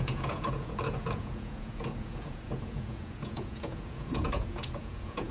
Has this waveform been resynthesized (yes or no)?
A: yes